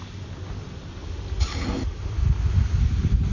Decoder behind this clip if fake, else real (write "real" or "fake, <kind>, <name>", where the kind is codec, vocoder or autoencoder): real